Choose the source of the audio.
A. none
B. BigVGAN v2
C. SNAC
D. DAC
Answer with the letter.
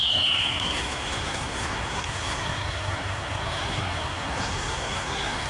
C